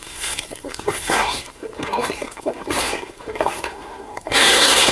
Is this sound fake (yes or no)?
yes